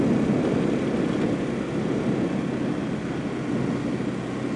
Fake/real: real